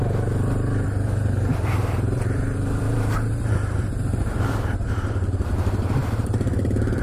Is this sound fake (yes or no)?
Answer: yes